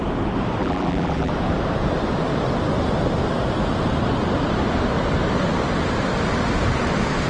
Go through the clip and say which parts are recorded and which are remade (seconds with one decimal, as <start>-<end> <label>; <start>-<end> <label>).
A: 0.0-0.6 recorded; 0.6-1.3 remade; 1.3-7.3 recorded